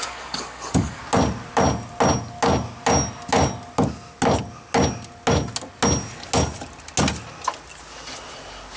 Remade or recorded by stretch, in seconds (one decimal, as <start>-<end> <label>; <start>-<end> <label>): 0.0-1.0 remade; 1.0-8.8 recorded

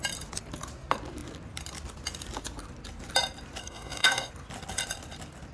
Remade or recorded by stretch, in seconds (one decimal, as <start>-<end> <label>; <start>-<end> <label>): 0.0-3.6 recorded; 3.6-4.3 remade; 4.3-5.5 recorded